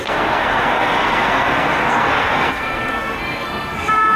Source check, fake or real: fake